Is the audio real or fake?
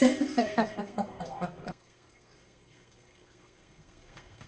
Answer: fake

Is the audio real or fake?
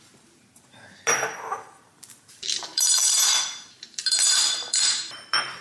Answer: fake